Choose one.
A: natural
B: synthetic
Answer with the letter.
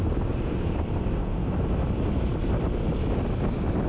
A